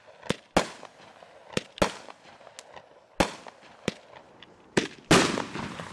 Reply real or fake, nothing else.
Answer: real